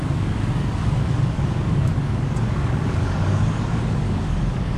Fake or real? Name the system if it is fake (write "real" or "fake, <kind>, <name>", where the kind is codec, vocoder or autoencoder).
fake, codec, DAC